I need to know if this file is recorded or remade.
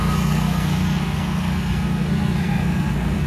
remade